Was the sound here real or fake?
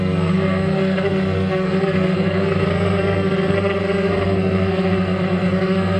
fake